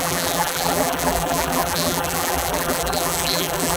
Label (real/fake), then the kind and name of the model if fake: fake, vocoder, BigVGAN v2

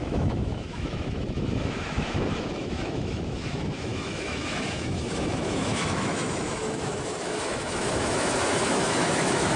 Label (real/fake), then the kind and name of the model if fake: fake, autoencoder, DAC-VAE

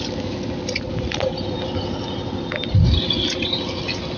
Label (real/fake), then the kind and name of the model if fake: real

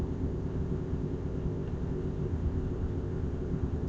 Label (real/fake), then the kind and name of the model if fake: fake, codec, ZipCodec